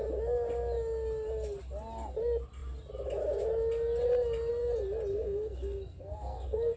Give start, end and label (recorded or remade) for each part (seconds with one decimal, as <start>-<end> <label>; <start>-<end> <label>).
0.0-5.1 recorded; 5.1-6.8 remade